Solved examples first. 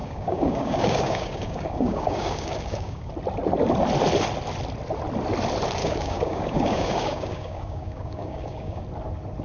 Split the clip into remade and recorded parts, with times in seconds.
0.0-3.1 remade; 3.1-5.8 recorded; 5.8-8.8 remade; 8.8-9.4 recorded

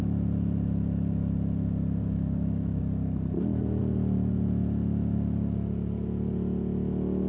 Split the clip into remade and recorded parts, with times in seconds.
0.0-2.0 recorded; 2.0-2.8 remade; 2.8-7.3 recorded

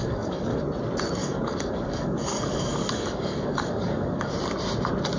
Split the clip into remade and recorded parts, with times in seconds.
0.0-0.6 remade; 0.6-1.2 recorded; 1.2-4.3 remade; 4.3-5.2 recorded

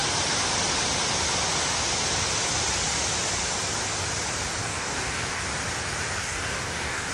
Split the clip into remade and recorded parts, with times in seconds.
0.0-4.6 recorded; 4.6-5.4 remade; 5.4-6.2 recorded; 6.2-7.1 remade